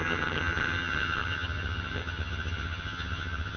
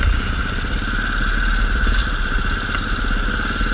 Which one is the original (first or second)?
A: second